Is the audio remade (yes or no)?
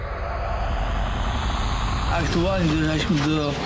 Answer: no